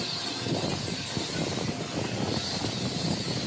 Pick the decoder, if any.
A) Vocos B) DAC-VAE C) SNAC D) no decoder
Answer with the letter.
D